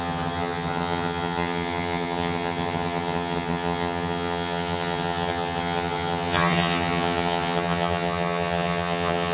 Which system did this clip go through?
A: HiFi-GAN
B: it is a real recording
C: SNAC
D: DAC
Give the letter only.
A